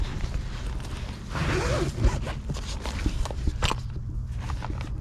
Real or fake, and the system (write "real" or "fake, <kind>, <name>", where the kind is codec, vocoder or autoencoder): real